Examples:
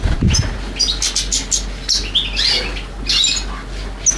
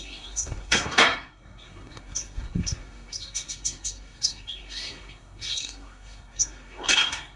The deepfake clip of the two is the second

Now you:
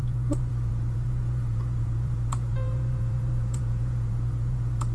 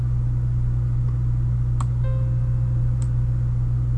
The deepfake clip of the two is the first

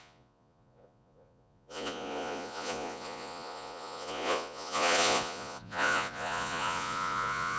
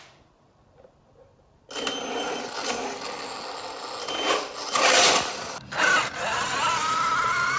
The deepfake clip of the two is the first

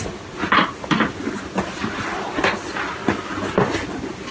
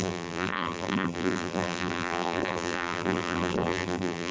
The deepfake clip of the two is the second